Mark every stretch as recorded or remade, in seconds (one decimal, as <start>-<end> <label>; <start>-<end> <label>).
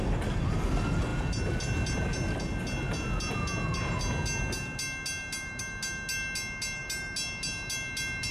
0.0-8.3 recorded